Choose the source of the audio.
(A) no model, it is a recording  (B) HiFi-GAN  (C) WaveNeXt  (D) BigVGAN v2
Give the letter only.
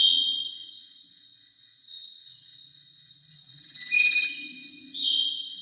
C